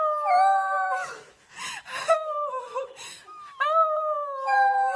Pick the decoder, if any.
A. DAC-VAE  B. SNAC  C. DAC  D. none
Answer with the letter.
A